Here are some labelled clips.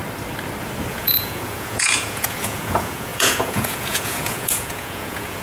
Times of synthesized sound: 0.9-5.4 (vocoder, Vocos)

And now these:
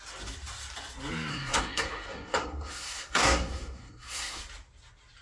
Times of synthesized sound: 1.3-4.4 (codec, SNAC)

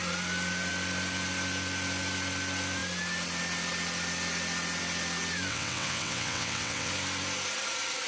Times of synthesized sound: 5.5-6.9 (vocoder, WaveNeXt)

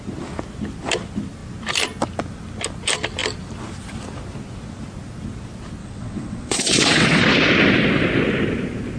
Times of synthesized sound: 5.8-7.2 (vocoder, WaveNeXt)

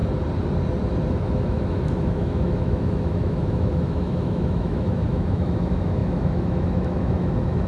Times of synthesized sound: 1.1-7.7 (autoencoder, DAC-VAE)

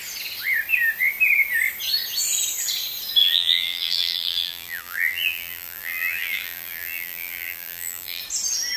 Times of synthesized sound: 3.2-8.2 (vocoder, BigVGAN v2)

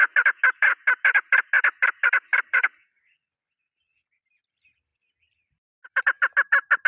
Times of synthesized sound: 2.3-3.0 (vocoder, BigVGAN v2)

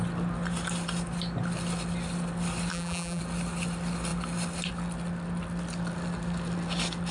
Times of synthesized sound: 2.7-3.2 (vocoder, BigVGAN v2)